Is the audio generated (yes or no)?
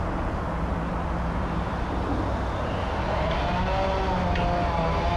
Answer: no